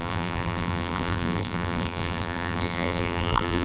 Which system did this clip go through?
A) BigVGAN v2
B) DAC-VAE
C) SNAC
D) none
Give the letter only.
A